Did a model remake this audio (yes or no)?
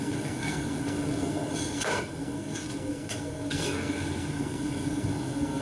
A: yes